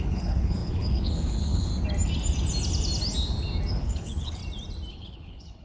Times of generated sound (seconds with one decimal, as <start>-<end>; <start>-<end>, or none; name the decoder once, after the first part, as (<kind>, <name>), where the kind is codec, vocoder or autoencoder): 0.0-1.7 (codec, HILCodec); 3.7-4.4; 4.9-5.6